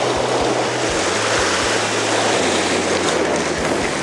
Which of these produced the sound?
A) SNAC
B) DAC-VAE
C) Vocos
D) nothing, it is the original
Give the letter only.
D